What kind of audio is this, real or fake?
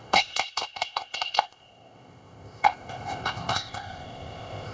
fake